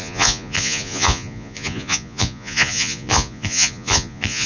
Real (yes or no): no